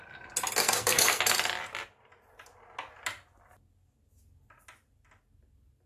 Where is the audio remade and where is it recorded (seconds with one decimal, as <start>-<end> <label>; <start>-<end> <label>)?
0.0-0.6 recorded; 0.6-1.2 remade; 1.2-5.9 recorded